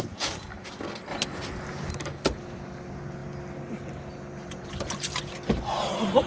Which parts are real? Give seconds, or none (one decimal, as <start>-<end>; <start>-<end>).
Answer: 0.0-6.3